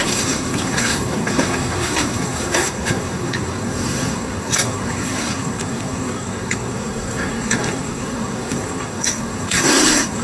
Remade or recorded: remade